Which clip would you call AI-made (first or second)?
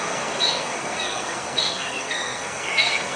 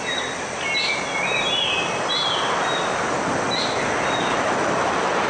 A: first